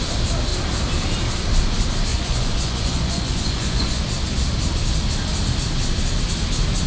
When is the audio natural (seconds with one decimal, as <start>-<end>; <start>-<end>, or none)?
0.0-2.1; 4.0-6.9